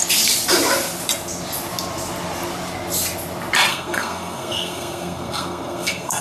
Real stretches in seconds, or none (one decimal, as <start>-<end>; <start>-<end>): 0.0-3.7

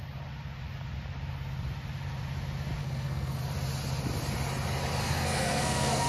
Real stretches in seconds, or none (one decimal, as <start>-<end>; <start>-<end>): 0.0-2.8; 3.4-5.0

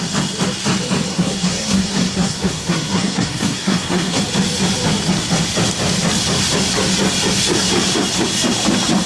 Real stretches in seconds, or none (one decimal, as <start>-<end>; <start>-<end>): 0.0-1.1; 4.2-9.1

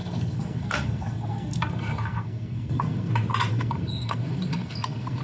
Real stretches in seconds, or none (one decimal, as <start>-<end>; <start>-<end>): 3.1-3.5